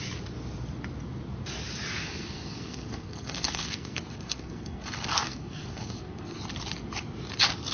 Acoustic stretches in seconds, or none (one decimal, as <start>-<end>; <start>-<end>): 0.0-1.9; 6.4-7.7